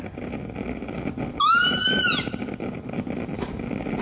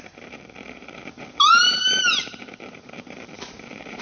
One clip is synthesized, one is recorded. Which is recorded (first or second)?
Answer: first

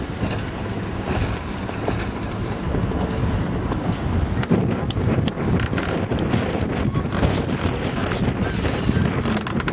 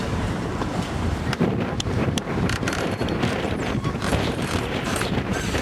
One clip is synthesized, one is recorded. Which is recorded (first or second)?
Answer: first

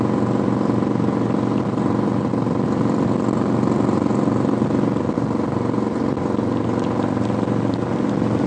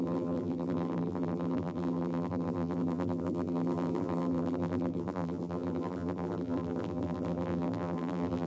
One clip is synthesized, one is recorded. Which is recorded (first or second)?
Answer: first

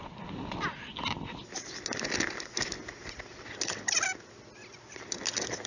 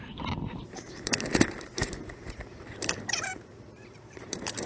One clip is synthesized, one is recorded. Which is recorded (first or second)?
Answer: first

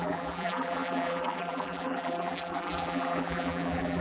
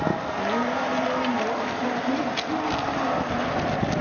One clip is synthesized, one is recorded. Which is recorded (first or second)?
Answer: second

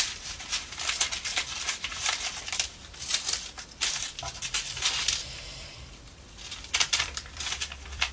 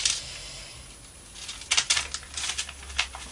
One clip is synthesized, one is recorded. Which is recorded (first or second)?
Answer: second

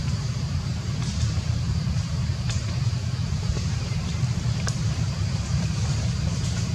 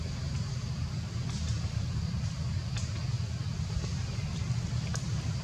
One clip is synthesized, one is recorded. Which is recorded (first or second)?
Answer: second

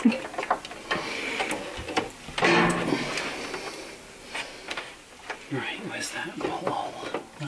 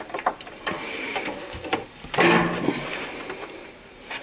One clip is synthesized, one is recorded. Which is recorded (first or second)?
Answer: first